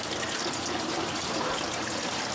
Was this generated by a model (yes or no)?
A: no